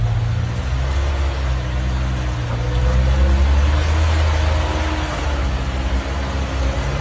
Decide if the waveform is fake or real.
real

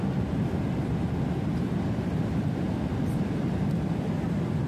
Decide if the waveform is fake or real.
real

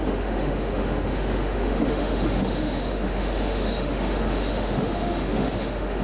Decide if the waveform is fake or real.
fake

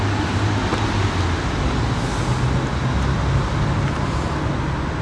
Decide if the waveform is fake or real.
real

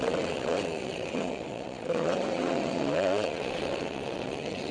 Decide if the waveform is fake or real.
fake